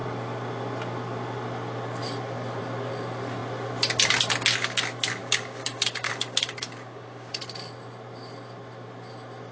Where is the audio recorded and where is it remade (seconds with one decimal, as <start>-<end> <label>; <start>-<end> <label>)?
0.0-5.2 recorded; 5.2-7.4 remade; 7.4-9.5 recorded